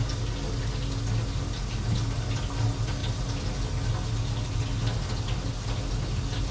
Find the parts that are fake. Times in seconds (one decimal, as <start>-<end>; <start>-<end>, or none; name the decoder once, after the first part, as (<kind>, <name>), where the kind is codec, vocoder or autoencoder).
none